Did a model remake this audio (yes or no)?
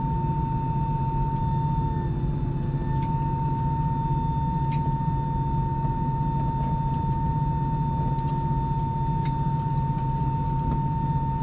no